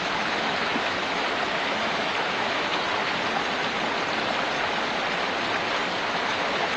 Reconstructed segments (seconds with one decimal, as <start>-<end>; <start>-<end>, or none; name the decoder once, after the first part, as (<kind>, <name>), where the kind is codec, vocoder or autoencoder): 0.0-2.7 (autoencoder, DAC-VAE); 6.1-6.8